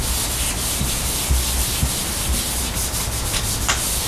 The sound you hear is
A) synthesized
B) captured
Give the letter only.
B